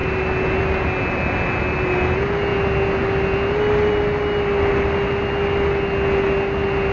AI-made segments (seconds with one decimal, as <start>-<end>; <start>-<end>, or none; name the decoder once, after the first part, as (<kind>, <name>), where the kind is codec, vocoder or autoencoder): none